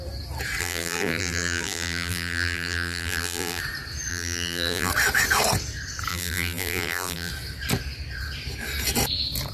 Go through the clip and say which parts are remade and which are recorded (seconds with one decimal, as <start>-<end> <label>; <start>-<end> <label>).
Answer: 0.0-0.6 recorded; 0.6-3.6 remade; 3.6-4.1 recorded; 4.1-4.9 remade; 4.9-6.1 recorded; 6.1-7.3 remade; 7.3-9.5 recorded